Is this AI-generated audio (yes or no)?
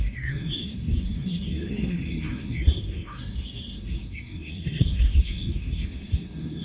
yes